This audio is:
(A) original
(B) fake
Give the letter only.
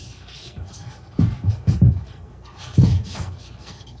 B